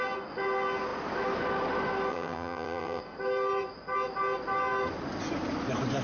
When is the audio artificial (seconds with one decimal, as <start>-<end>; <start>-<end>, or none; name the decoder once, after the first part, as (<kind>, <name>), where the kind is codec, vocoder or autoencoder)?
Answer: 2.1-3.0 (vocoder, HiFi-GAN)